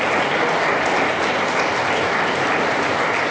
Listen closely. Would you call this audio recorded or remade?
recorded